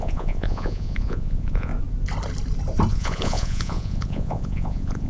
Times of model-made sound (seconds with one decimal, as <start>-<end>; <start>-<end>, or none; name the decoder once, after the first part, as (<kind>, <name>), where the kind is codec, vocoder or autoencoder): 0.0-1.7 (vocoder, Vocos); 2.9-5.1